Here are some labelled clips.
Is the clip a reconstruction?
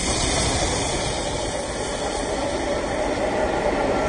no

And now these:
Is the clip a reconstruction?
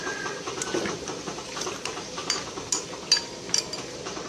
no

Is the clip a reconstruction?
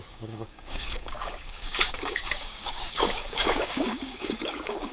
yes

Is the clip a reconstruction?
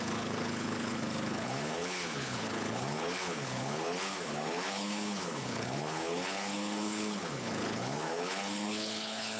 yes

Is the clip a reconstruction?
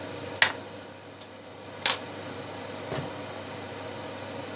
no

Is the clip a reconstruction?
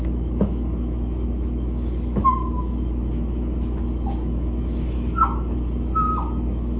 yes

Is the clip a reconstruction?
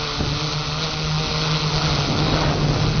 no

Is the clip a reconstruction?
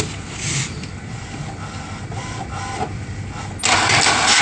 no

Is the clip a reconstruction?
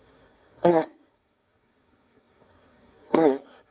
yes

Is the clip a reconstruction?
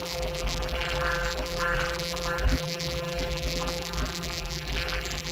yes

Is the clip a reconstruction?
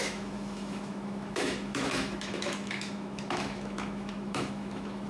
yes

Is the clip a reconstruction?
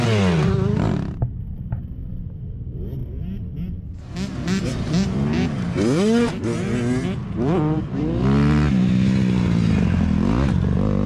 no